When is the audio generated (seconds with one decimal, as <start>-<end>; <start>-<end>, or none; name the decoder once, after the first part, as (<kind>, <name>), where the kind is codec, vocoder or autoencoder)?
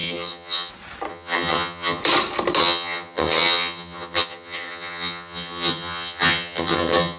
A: 0.0-0.7 (vocoder, HiFi-GAN); 1.1-2.0; 2.6-7.2